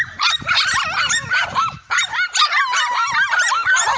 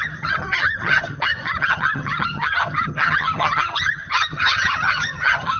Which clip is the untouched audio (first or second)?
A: first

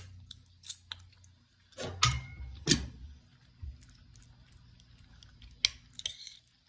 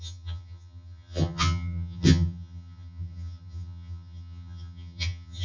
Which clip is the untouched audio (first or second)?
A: first